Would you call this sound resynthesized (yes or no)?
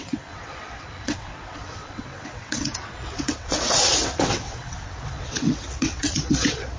yes